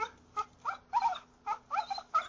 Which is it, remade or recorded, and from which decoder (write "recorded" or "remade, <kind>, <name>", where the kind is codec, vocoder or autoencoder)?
recorded